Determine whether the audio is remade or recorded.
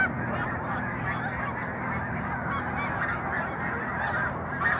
recorded